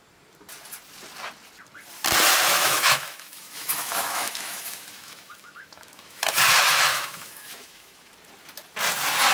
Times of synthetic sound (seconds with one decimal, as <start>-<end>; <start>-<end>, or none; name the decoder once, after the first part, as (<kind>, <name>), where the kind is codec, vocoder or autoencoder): 2.5-6.2 (autoencoder, DAC-VAE); 6.9-8.1